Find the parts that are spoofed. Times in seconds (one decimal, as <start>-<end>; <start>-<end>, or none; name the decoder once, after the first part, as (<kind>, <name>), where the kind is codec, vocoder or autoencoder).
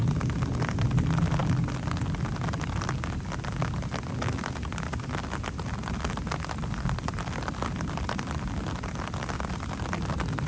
none